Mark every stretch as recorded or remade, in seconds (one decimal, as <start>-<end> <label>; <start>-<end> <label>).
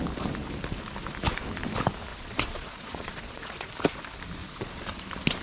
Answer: 0.0-2.1 recorded; 2.1-3.7 remade; 3.7-4.4 recorded; 4.4-5.0 remade; 5.0-5.4 recorded